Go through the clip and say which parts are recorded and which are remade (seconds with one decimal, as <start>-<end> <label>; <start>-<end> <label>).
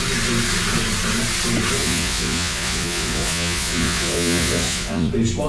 0.0-1.8 recorded; 1.8-5.1 remade; 5.1-5.5 recorded